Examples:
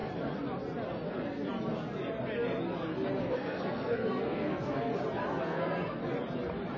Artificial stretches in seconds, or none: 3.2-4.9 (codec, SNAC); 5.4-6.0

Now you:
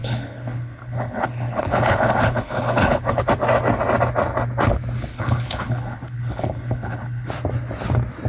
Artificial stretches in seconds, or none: 0.0-3.2 (codec, HILCodec); 5.1-7.3

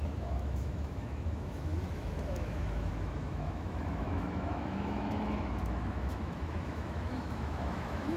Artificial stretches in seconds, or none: 0.0-8.2 (autoencoder, DAC-VAE)

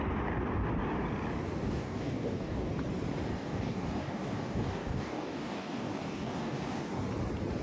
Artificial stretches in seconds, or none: 1.6-2.7 (codec, DAC); 3.3-6.9

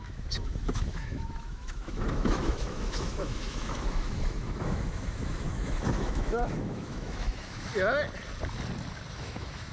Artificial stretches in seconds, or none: 0.0-7.7 (autoencoder, DAC-VAE); 9.1-9.7